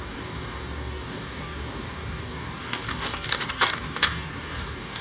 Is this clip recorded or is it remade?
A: remade